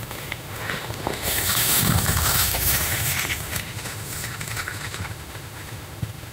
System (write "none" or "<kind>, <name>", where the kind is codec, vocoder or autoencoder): autoencoder, DAC-VAE